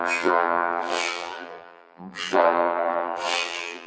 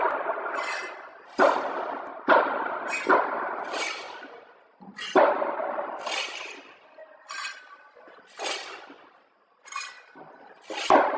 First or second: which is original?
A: second